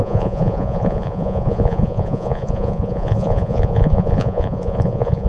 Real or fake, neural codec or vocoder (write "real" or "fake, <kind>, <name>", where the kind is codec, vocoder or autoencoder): fake, vocoder, Vocos